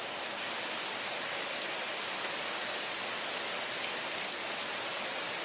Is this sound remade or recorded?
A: recorded